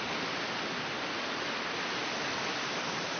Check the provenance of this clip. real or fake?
real